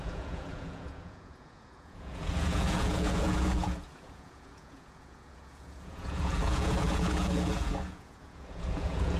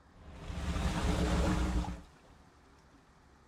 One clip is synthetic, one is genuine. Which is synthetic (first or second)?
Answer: first